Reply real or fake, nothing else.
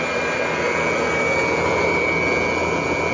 real